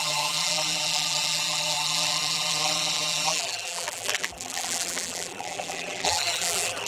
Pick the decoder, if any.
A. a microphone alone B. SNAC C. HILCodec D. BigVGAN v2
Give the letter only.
D